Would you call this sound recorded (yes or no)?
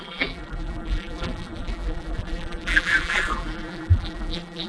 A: no